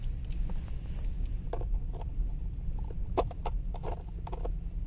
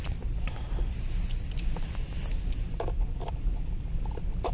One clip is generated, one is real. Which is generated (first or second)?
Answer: second